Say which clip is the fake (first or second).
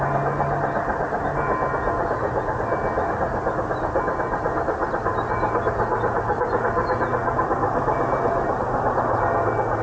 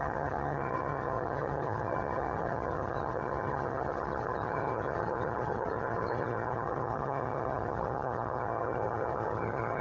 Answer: second